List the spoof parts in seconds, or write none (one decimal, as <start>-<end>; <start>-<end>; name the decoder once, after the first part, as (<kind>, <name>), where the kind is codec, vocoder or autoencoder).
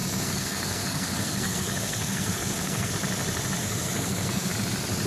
0.0-2.9 (codec, SNAC); 3.6-4.5